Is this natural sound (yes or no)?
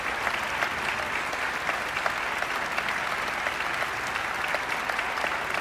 yes